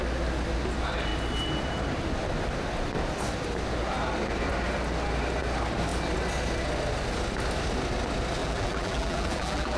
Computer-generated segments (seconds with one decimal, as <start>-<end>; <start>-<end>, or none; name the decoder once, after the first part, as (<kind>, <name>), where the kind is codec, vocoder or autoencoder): 8.4-9.8 (vocoder, BigVGAN v2)